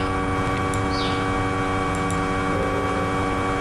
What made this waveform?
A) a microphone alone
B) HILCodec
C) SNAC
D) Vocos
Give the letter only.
A